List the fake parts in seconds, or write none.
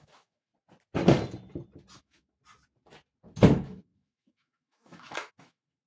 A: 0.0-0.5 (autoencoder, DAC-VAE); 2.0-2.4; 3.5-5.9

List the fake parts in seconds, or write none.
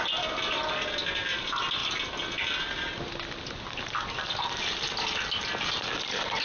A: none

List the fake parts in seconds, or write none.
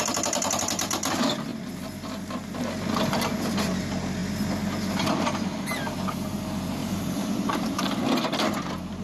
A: 6.8-7.8 (vocoder, BigVGAN v2)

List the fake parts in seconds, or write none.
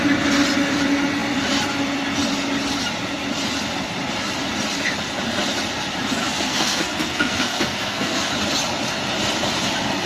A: 6.2-8.3 (codec, SNAC)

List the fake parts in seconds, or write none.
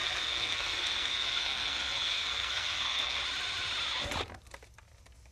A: 0.0-3.2 (codec, SNAC)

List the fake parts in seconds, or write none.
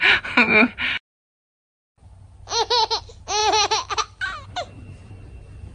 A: none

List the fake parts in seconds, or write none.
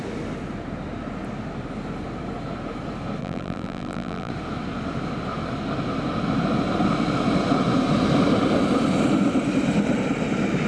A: 3.2-4.3 (vocoder, BigVGAN v2)